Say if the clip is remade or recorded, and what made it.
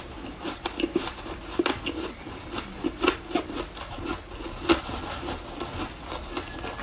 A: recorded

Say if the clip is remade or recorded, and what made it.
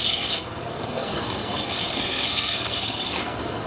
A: remade, codec, SNAC